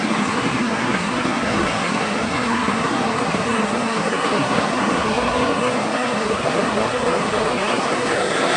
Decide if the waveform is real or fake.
fake